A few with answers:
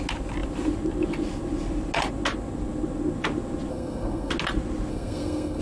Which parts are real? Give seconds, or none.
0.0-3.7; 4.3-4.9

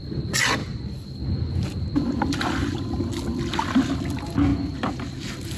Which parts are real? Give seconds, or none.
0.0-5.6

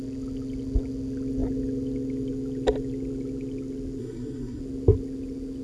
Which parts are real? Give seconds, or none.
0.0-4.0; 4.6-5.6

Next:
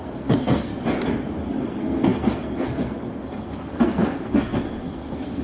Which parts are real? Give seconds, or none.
0.7-1.6